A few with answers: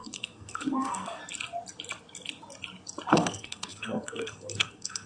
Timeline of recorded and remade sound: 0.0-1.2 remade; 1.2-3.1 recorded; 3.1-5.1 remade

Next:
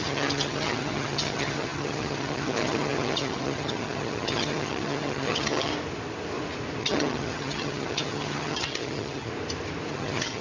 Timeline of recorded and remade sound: 0.0-5.7 remade; 5.7-6.8 recorded; 6.8-9.3 remade; 9.3-9.9 recorded; 9.9-10.4 remade

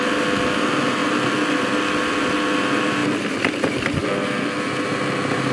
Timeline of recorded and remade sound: 0.0-5.5 recorded